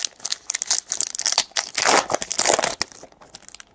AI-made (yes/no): no